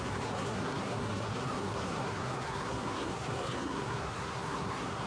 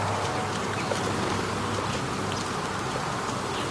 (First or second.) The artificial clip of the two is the first